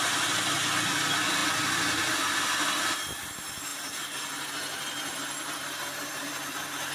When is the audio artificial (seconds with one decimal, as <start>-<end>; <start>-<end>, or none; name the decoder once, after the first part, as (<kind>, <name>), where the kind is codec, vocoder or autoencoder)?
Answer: 1.4-2.7 (vocoder, BigVGAN v2); 3.7-4.5